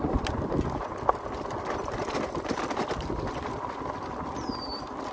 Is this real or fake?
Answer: real